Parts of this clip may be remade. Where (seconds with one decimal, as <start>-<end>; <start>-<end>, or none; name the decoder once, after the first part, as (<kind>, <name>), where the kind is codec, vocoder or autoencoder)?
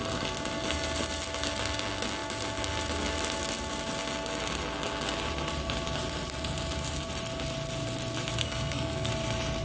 8.4-9.1 (codec, SNAC)